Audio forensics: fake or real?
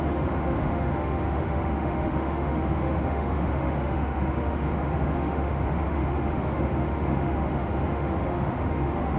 fake